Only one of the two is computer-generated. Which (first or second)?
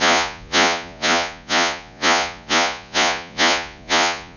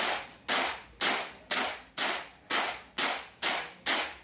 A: first